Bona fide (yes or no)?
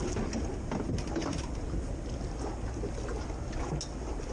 yes